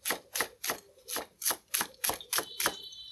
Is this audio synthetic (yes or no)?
no